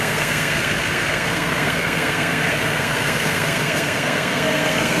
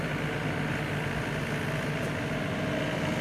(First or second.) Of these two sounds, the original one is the second